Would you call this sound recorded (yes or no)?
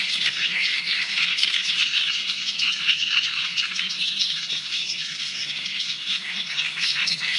no